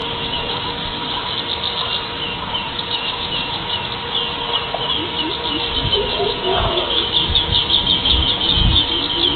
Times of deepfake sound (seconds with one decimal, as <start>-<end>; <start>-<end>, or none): 0.0-0.6; 2.6-3.9; 5.8-7.1; 8.0-8.9